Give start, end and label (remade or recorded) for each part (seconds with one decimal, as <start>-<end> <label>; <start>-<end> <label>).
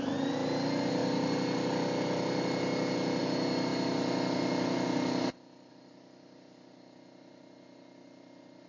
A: 0.0-8.7 recorded